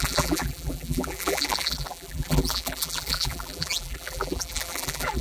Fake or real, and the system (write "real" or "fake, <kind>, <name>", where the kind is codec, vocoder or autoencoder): fake, vocoder, BigVGAN v2